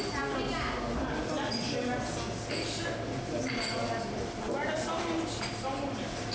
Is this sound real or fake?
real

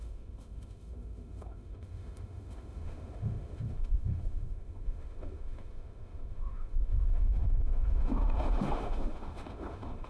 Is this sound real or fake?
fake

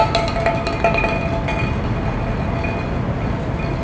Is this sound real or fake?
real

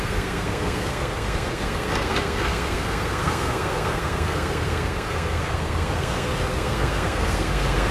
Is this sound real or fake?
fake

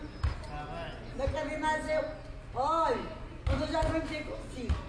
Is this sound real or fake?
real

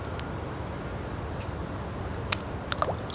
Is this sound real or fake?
real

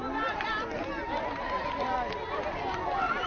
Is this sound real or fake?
real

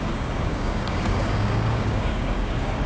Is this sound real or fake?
fake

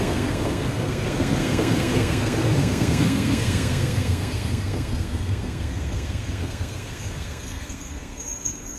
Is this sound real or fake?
fake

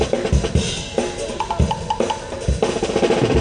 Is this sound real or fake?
real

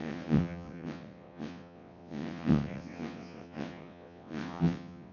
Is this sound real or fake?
fake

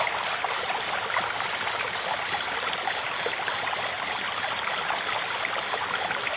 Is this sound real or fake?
real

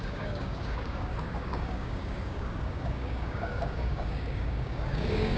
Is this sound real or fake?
fake